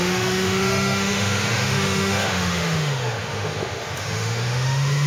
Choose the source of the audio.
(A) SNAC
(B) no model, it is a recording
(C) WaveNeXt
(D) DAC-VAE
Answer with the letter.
D